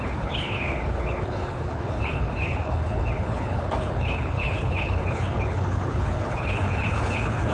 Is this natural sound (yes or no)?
no